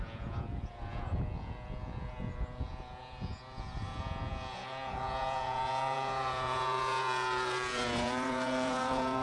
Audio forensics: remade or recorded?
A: remade